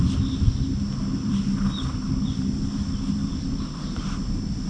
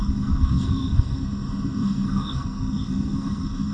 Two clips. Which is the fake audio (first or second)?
second